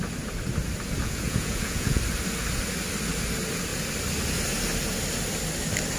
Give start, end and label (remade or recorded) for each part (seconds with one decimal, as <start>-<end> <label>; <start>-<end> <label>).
0.0-1.0 recorded; 1.0-2.0 remade; 2.0-6.0 recorded